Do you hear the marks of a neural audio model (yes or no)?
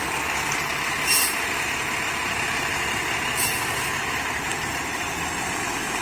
no